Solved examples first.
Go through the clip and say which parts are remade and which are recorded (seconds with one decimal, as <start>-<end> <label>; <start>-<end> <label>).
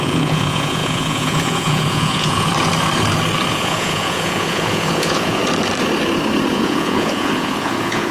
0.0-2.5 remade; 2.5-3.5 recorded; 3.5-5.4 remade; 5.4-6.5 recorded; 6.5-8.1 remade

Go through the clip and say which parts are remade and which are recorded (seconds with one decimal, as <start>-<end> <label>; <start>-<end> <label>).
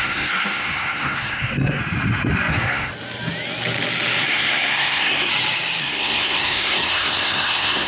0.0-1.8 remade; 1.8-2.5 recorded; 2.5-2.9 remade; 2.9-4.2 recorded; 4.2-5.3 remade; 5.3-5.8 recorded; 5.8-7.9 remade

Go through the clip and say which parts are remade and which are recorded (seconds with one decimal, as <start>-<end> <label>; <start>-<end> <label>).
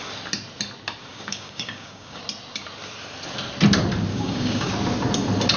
0.0-1.1 recorded; 1.1-2.2 remade; 2.2-4.1 recorded; 4.1-4.7 remade; 4.7-5.6 recorded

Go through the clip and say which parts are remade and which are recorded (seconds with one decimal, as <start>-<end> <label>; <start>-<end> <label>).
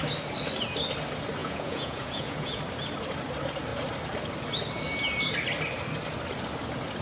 0.0-1.4 recorded; 1.4-2.6 remade; 2.6-7.0 recorded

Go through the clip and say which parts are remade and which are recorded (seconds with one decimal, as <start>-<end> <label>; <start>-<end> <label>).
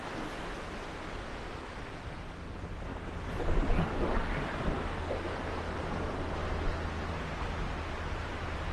0.0-8.7 recorded